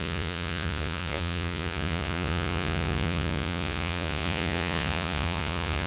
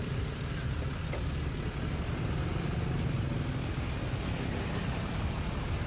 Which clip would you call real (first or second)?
second